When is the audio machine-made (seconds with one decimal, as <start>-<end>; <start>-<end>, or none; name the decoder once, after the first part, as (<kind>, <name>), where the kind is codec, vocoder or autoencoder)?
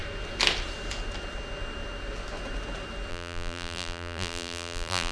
3.1-5.1 (vocoder, BigVGAN v2)